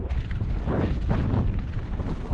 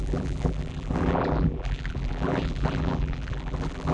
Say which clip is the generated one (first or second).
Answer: second